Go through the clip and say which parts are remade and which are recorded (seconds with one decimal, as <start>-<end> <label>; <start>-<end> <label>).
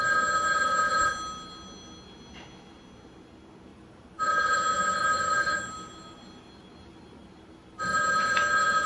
0.0-3.7 recorded; 3.7-8.2 remade; 8.2-8.9 recorded